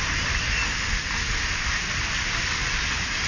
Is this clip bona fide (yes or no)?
yes